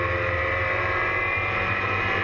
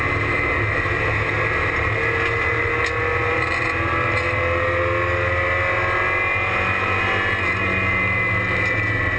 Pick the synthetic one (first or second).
first